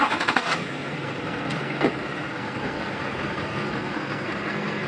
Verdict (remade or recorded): remade